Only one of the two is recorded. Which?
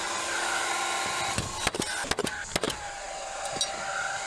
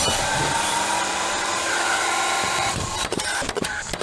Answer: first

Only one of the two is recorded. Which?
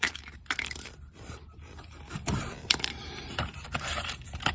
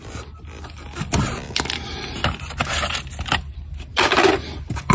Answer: second